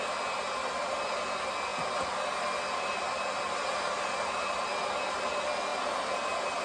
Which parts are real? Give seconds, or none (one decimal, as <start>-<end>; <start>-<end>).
0.0-6.6

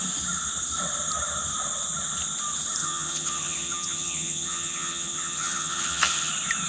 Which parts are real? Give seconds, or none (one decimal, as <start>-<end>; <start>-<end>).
0.0-2.8; 6.3-6.7

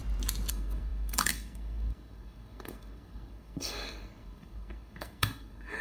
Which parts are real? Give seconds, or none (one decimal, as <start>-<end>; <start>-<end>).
0.0-0.5

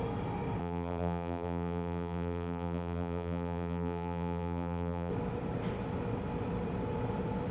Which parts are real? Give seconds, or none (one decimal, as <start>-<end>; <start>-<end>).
0.0-0.6; 5.1-7.5

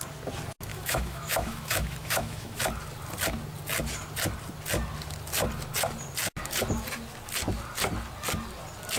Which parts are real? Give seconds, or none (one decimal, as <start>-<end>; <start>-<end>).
0.0-0.7; 2.6-9.0